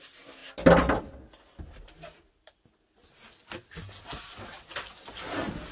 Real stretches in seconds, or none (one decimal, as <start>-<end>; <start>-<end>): 0.0-5.7

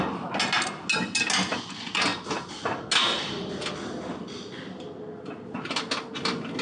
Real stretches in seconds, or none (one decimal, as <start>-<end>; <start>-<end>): 0.0-6.6

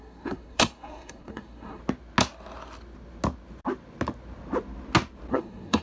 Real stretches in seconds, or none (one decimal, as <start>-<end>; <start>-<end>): 1.8-5.3

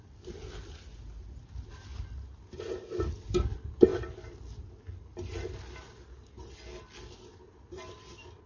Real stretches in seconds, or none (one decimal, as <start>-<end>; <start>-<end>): 0.0-8.5

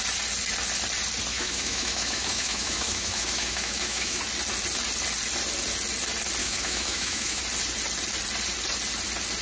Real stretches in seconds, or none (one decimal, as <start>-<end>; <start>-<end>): 0.0-1.3; 4.2-6.4; 7.4-9.4

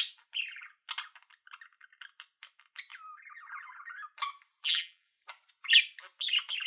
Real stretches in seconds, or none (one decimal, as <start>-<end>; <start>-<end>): 0.0-4.6; 5.1-6.7

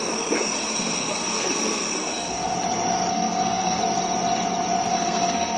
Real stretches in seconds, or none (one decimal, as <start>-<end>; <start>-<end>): 0.0-0.7; 2.3-3.1; 3.8-4.9